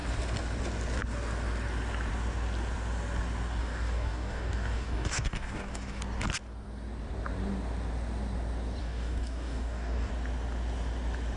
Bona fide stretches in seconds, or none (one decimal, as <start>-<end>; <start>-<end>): 0.0-3.6; 6.0-8.8; 10.1-11.4